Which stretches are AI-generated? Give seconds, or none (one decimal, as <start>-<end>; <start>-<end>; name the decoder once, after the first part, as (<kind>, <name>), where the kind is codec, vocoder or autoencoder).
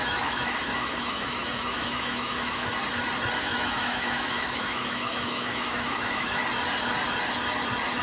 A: 0.0-2.7 (autoencoder, DAC-VAE); 3.4-6.4